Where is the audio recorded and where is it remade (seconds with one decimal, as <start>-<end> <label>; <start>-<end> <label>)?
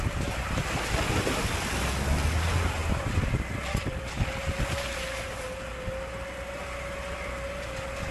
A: 0.0-8.1 recorded